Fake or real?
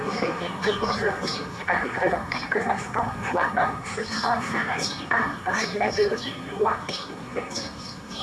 fake